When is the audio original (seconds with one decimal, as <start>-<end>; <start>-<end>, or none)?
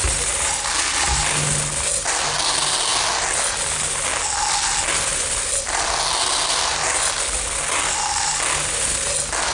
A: 0.0-5.1; 6.2-9.5